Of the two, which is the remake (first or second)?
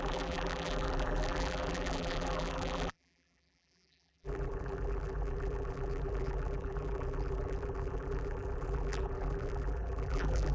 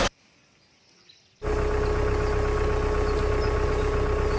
first